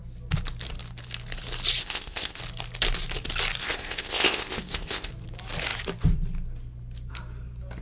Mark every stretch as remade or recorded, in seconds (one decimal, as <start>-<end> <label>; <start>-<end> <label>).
0.0-1.8 recorded; 1.8-2.4 remade; 2.4-3.6 recorded; 3.6-5.1 remade; 5.1-7.8 recorded